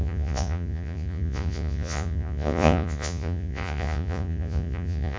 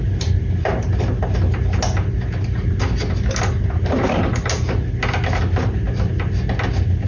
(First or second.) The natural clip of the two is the second